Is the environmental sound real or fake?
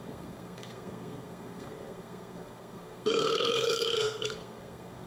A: fake